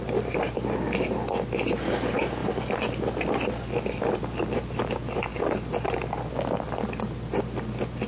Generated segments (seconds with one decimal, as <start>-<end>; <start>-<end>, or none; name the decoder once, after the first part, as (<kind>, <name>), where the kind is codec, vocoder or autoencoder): none